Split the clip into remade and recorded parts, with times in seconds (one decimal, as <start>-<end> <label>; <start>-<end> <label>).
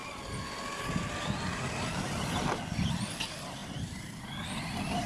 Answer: 0.0-5.1 recorded